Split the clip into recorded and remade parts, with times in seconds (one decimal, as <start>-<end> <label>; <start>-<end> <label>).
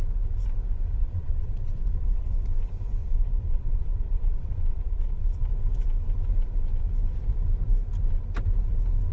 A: 0.0-1.0 recorded; 1.0-2.3 remade; 2.3-3.0 recorded; 3.0-5.5 remade; 5.5-9.1 recorded